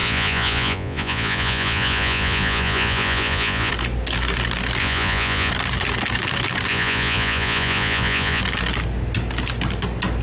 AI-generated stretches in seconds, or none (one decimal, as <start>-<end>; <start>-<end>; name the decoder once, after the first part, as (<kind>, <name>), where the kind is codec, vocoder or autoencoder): 0.0-3.7 (vocoder, Vocos); 4.8-5.5; 6.7-8.4